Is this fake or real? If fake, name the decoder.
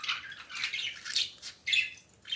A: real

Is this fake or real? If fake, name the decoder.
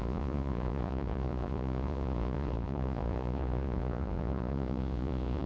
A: fake, vocoder, Vocos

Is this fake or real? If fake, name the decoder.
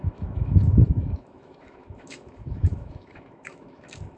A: fake, autoencoder, DAC-VAE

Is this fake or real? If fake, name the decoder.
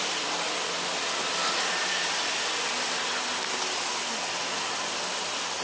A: real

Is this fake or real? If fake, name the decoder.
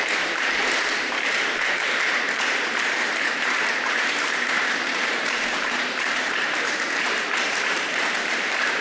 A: fake, vocoder, BigVGAN v2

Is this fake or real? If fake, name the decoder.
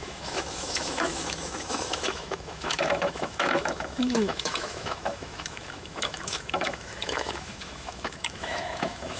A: fake, autoencoder, DAC-VAE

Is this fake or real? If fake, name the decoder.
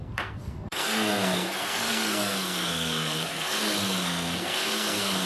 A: fake, codec, SNAC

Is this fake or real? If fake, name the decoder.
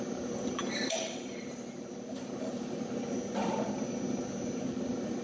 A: fake, vocoder, BigVGAN v2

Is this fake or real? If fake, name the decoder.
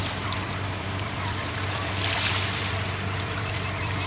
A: fake, vocoder, BigVGAN v2